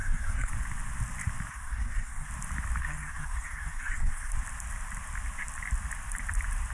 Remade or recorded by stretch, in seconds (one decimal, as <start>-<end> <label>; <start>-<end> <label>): 0.0-0.5 remade; 0.5-1.5 recorded; 1.5-2.3 remade; 2.3-2.8 recorded; 2.8-4.3 remade; 4.3-6.7 recorded